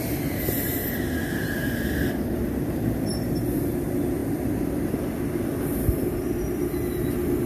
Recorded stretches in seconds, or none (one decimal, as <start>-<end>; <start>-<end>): 0.7-1.4